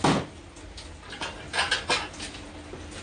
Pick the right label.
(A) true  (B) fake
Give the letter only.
A